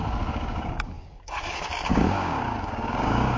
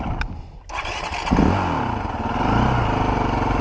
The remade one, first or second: first